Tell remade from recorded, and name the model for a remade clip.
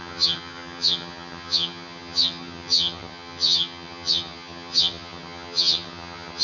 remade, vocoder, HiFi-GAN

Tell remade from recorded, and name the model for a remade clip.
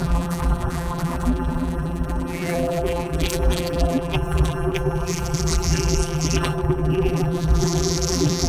remade, vocoder, BigVGAN v2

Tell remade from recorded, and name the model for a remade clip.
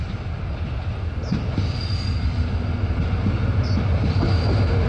recorded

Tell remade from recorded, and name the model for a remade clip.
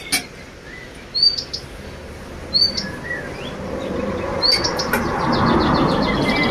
recorded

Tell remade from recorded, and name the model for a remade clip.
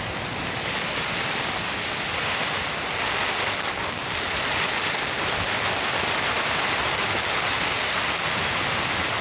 recorded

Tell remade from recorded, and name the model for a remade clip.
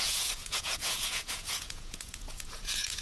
remade, vocoder, Vocos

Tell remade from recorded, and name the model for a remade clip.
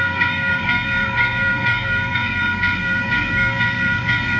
remade, codec, SNAC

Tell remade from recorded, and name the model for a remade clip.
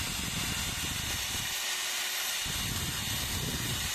recorded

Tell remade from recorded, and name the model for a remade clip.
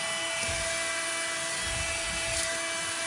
recorded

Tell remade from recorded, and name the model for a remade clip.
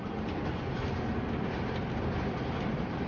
recorded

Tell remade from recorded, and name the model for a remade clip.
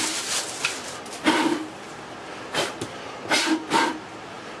remade, vocoder, BigVGAN v2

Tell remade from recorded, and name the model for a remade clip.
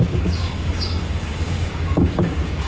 remade, codec, DAC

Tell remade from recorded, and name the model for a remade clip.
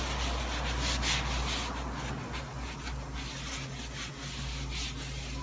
recorded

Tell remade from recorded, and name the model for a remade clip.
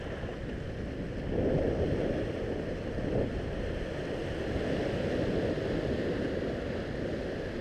recorded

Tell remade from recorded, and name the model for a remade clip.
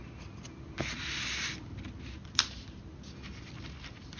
recorded